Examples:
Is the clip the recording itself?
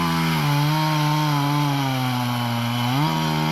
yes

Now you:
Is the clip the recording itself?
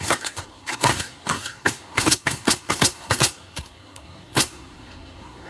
no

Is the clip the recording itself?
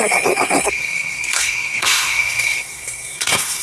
no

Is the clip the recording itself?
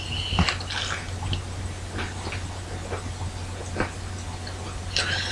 yes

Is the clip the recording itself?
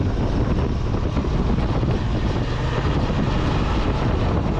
yes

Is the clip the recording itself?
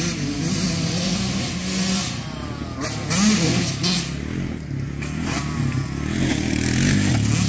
yes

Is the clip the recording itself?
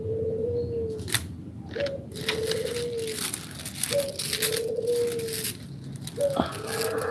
yes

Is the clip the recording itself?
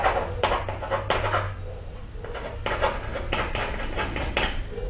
yes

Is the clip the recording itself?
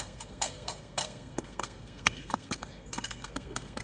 no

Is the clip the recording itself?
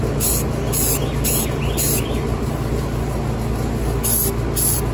yes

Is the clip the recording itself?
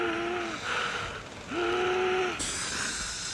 yes